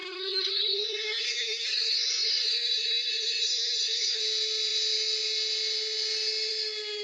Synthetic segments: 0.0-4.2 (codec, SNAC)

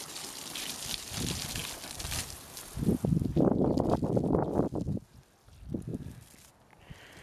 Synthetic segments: none

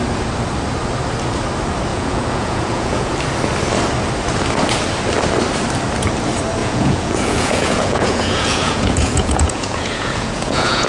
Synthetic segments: 1.9-3.1 (vocoder, Vocos); 6.6-10.9

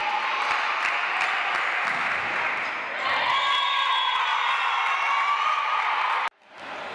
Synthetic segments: none

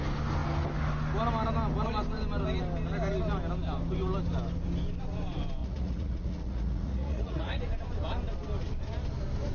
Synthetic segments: 5.6-7.6 (vocoder, Vocos)

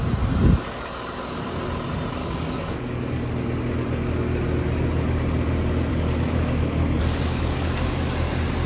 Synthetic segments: 2.2-3.3 (codec, DAC); 5.9-7.9

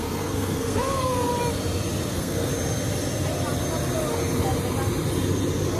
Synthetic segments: 0.0-1.3 (codec, SNAC); 2.1-2.5